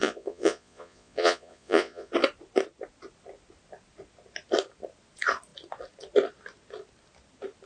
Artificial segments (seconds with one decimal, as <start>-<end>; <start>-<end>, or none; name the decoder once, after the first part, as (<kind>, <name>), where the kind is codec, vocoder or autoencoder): 0.0-2.1 (vocoder, Vocos)

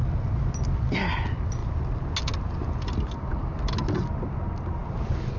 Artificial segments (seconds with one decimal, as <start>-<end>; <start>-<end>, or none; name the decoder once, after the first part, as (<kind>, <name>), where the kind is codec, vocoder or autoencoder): none

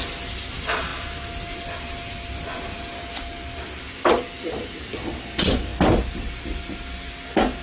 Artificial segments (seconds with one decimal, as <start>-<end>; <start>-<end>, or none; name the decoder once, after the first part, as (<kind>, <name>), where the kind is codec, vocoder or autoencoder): none

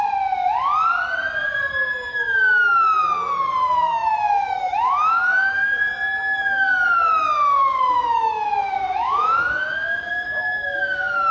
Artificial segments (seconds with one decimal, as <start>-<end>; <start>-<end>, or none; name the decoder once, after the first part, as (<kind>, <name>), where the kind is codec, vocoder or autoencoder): 2.1-2.8 (autoencoder, DAC-VAE); 3.6-5.8; 7.6-11.3

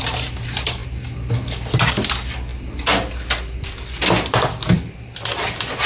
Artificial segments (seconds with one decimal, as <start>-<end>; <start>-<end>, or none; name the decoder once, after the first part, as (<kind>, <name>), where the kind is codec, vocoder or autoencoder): none

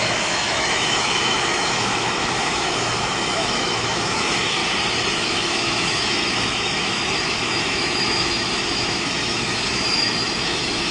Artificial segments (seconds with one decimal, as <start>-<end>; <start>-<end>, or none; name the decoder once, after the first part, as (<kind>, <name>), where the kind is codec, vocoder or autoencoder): 0.0-4.6 (autoencoder, DAC-VAE); 5.1-10.9

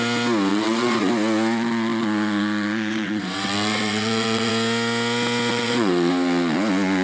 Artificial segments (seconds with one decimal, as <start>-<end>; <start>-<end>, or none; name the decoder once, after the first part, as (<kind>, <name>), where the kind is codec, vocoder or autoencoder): 0.5-1.1 (vocoder, WaveNeXt); 2.9-4.5; 5.5-6.1